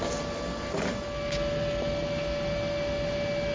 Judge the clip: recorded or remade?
recorded